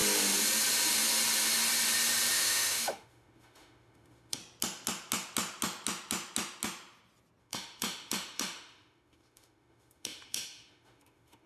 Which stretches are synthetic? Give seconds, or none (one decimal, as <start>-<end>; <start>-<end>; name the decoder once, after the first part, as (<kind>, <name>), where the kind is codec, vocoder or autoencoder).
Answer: 2.3-4.4 (autoencoder, DAC-VAE); 7.4-11.5